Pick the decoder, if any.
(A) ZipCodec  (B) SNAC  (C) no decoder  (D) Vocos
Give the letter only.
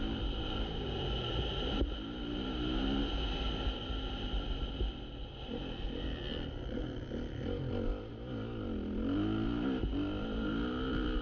C